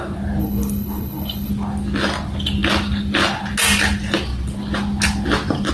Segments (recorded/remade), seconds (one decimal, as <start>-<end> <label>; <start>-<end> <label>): 0.0-0.4 recorded; 0.4-1.5 remade; 1.5-5.7 recorded